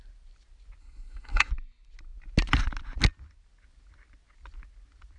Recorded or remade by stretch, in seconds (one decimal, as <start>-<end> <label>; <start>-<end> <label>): 0.0-0.8 recorded; 0.8-1.5 remade; 1.5-5.2 recorded